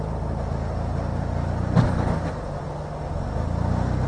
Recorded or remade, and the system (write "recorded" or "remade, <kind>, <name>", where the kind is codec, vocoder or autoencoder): recorded